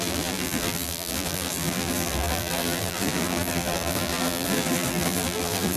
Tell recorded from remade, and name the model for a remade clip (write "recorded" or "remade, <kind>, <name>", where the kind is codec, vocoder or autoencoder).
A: remade, vocoder, BigVGAN v2